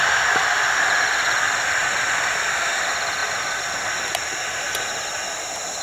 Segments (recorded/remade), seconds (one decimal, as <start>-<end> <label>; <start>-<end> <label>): 0.0-1.8 recorded; 1.8-2.7 remade; 2.7-3.2 recorded; 3.2-3.7 remade; 3.7-5.8 recorded